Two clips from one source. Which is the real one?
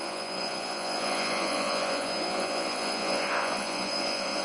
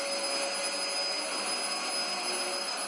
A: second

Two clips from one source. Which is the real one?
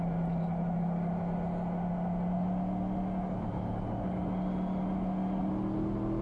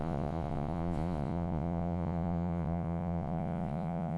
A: first